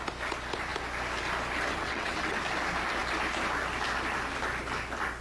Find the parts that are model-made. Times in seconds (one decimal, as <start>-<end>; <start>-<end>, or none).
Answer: 1.7-2.4